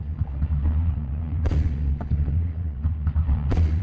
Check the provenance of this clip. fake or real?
fake